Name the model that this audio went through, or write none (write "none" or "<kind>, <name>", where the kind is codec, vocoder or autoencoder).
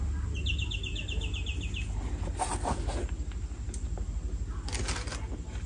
none